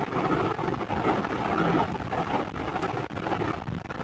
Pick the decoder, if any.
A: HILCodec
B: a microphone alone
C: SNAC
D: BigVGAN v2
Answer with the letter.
B